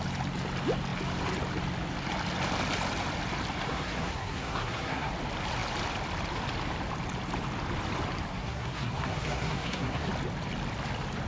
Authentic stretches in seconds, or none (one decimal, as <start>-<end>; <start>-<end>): 0.0-3.7; 5.1-8.3; 10.1-11.3

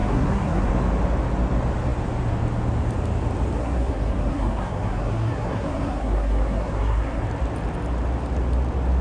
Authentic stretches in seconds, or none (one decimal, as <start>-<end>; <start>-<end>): 0.7-3.6; 7.2-9.0

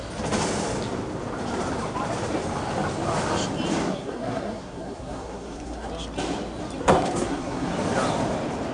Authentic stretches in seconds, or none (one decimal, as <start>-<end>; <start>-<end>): 0.0-3.8; 5.9-6.8; 7.7-8.7

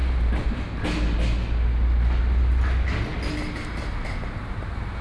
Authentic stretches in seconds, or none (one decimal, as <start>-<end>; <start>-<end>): 0.0-5.0

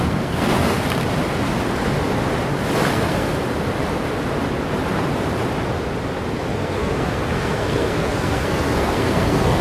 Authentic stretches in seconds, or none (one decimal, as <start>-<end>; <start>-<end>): 0.8-2.9; 3.3-6.4

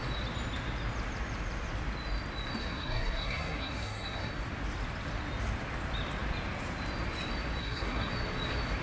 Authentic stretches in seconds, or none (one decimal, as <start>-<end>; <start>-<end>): 0.0-2.6; 4.3-7.6; 8.1-8.8